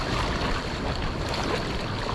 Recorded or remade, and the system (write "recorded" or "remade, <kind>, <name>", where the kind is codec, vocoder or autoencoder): recorded